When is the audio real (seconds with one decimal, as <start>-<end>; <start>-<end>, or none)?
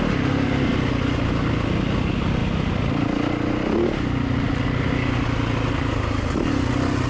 0.0-7.1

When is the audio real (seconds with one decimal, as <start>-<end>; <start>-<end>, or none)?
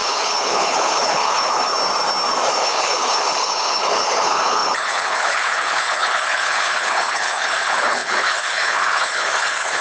1.7-2.5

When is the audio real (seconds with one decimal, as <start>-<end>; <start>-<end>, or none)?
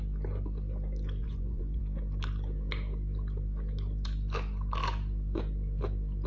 0.0-1.2; 1.8-6.3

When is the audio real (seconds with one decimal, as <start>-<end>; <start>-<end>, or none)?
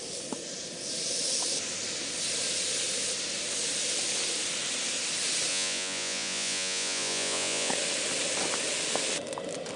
0.0-5.5; 7.7-9.8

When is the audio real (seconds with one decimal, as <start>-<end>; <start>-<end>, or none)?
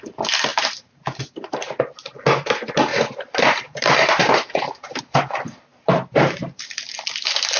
0.0-0.5; 1.2-2.9; 5.0-5.7; 6.6-7.6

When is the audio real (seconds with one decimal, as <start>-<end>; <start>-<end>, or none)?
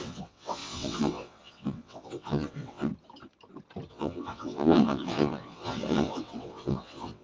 2.9-3.9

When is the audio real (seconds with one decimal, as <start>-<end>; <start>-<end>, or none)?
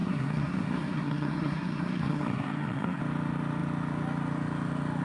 3.0-5.0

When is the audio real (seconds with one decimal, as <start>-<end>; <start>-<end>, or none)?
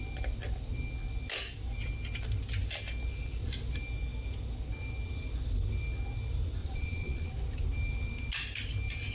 0.0-6.6; 7.3-9.1